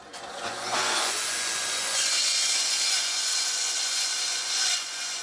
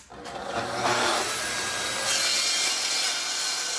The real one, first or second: second